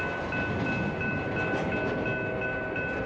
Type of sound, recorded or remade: recorded